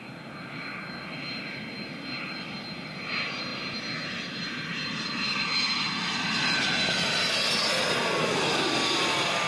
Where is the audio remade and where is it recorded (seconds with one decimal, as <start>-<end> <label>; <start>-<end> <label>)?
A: 0.0-9.5 recorded